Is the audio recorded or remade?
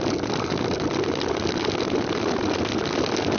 recorded